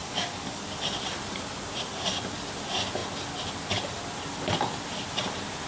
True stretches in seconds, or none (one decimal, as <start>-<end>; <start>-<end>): 0.6-5.7